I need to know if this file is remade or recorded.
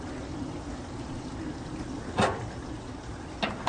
recorded